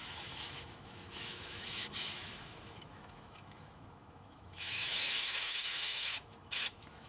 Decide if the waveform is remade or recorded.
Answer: remade